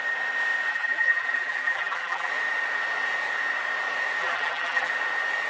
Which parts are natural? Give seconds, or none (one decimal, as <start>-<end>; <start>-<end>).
0.0-0.7; 2.3-4.2; 4.9-5.5